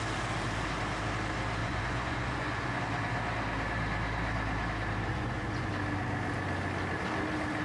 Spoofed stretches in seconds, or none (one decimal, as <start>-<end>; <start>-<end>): 1.6-2.8; 5.1-5.7